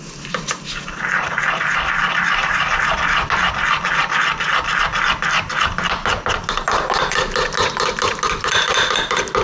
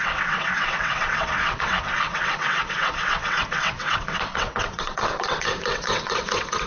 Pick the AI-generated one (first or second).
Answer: second